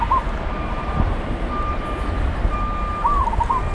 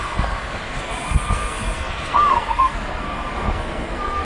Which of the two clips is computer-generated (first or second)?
second